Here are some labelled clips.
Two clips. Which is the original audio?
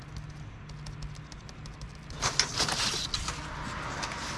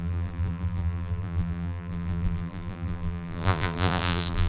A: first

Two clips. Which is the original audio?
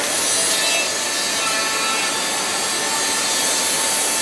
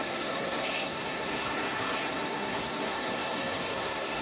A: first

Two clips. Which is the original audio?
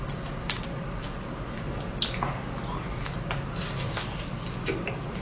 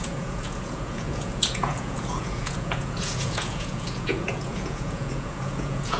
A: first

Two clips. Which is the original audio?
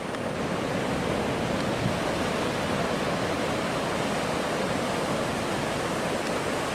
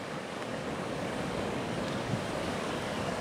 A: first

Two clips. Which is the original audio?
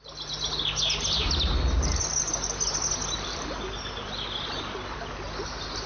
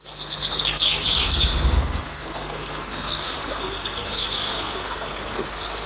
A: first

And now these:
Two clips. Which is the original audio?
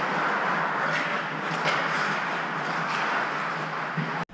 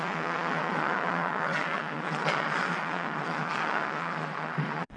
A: first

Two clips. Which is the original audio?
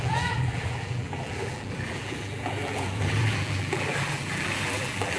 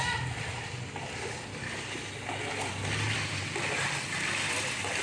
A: second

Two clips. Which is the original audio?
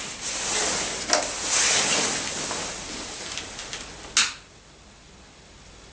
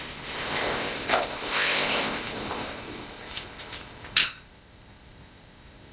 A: first